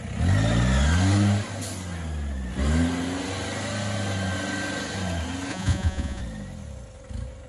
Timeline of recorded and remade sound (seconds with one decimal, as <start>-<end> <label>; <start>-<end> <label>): 0.0-5.5 recorded; 5.5-6.2 remade; 6.2-7.5 recorded